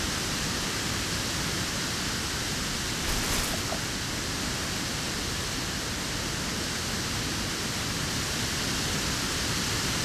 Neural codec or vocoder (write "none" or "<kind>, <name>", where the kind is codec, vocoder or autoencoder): none